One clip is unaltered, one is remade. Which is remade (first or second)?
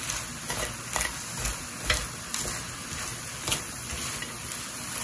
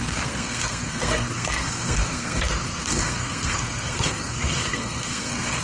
second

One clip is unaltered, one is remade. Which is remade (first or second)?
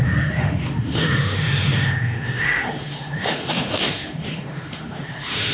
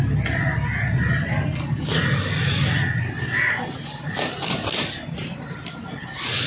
first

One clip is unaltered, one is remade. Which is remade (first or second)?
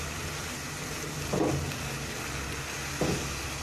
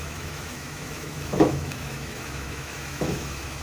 second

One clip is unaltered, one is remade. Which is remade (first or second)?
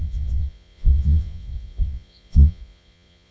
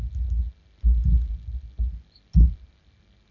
first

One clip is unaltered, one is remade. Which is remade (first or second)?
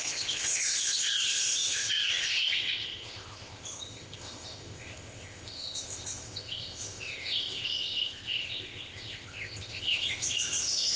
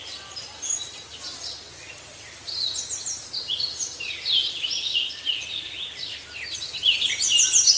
first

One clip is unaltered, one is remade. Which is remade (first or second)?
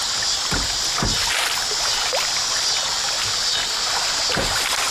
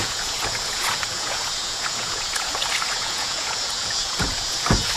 second